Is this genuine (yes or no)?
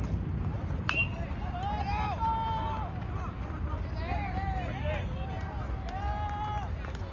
yes